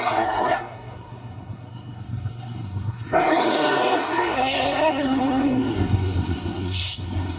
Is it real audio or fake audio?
fake